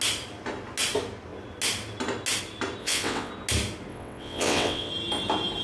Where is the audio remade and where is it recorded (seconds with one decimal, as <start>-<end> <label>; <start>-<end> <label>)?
0.0-2.8 recorded; 2.8-3.3 remade; 3.3-3.9 recorded; 3.9-4.9 remade; 4.9-5.6 recorded

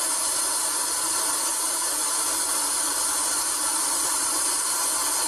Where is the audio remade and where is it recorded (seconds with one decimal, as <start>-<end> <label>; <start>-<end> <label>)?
0.0-3.7 recorded; 3.7-4.5 remade; 4.5-5.3 recorded

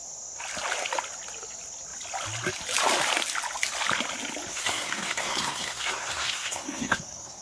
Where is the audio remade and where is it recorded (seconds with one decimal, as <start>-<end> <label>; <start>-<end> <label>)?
0.0-4.5 recorded; 4.5-7.4 remade

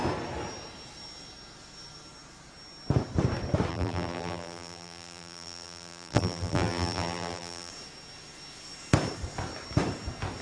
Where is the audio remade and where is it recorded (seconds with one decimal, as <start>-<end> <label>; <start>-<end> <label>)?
0.0-3.7 recorded; 3.7-7.7 remade; 7.7-10.4 recorded